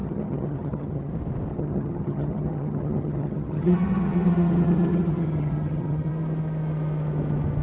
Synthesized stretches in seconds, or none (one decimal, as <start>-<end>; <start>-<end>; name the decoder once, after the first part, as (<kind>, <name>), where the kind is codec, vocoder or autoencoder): 0.0-1.1 (vocoder, HiFi-GAN); 1.5-6.1